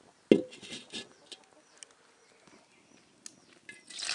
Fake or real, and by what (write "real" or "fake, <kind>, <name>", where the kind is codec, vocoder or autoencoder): real